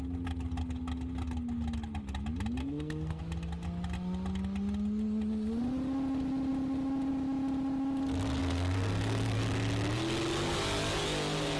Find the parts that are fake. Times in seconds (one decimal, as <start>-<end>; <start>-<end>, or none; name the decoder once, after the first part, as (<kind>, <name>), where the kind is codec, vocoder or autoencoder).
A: 2.6-3.2 (codec, SNAC); 8.4-9.4